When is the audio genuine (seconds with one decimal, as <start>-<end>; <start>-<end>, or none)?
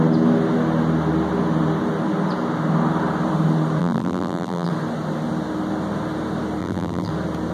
0.0-3.8; 4.7-6.6; 7.1-7.5